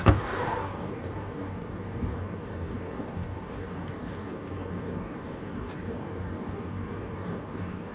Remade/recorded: remade